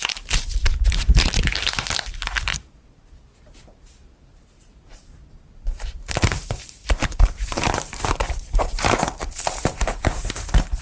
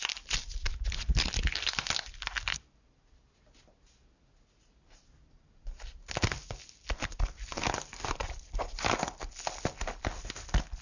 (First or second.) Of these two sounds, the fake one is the first